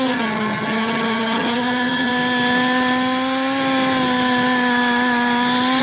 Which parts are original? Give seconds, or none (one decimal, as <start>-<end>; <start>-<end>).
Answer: 2.1-5.8